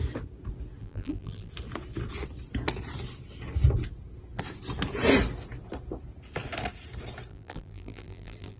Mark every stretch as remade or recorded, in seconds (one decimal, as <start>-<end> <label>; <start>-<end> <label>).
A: 0.0-0.8 recorded; 0.8-1.5 remade; 1.5-7.3 recorded; 7.3-8.6 remade